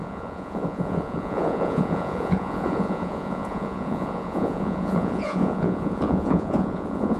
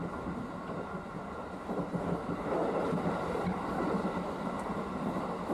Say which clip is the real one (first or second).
second